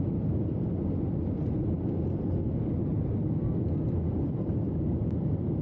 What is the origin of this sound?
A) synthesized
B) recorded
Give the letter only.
B